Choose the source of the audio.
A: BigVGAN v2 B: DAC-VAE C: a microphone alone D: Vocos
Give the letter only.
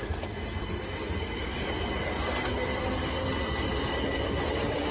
C